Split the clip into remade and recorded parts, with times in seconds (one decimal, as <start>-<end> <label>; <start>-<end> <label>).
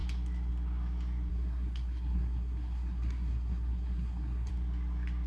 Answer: 0.0-1.3 recorded; 1.3-4.5 remade; 4.5-5.3 recorded